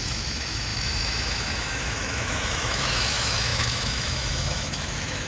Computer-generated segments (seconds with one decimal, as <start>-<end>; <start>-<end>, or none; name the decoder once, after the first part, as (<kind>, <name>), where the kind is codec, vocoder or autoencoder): 0.0-5.3 (autoencoder, DAC-VAE)